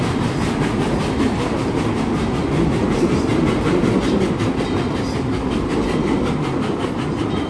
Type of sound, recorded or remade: recorded